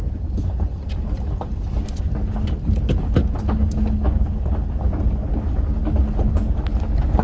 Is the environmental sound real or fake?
real